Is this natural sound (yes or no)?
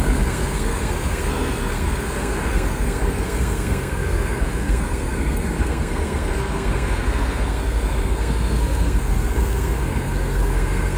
no